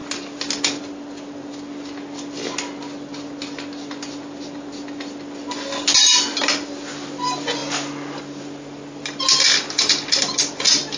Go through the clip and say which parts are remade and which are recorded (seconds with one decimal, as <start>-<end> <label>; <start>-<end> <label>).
0.0-11.0 recorded